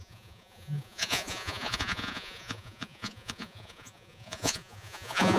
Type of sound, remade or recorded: remade